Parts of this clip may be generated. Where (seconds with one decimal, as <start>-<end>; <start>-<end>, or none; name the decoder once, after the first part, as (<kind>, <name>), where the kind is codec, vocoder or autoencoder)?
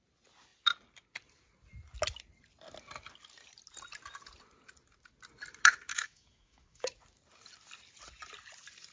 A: 5.9-6.9 (autoencoder, DAC-VAE)